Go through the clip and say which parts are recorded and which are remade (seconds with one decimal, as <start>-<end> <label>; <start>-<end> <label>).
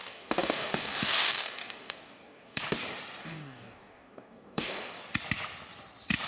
0.0-2.6 remade; 2.6-3.2 recorded; 3.2-5.0 remade; 5.0-6.3 recorded